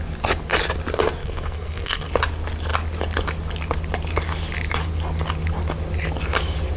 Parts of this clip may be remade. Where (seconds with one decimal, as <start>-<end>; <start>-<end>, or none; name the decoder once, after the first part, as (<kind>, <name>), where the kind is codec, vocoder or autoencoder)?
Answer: 1.2-2.1 (codec, SNAC)